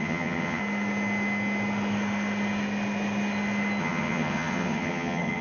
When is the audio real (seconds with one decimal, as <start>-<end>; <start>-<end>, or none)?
0.6-3.8